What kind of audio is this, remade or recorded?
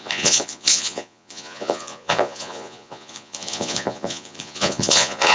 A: remade